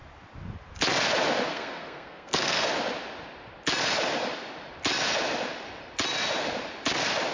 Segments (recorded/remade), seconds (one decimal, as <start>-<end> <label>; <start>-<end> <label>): 0.0-1.5 recorded; 1.5-2.7 remade; 2.7-7.3 recorded